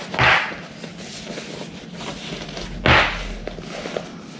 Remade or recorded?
recorded